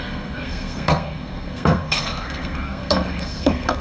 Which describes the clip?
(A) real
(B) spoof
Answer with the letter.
B